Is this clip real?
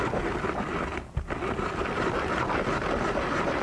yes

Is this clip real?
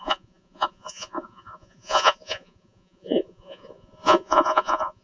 no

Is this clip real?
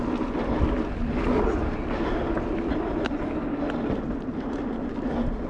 yes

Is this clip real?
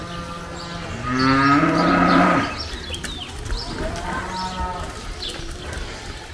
yes